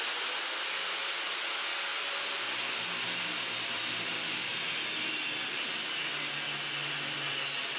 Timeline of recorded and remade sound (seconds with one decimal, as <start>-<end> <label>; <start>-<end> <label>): 0.0-7.8 recorded